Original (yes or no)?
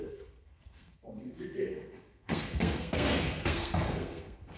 no